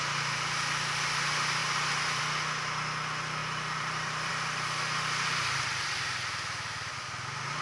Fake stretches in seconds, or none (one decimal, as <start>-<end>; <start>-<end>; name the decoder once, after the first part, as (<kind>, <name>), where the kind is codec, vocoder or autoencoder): 3.4-4.3 (vocoder, BigVGAN v2)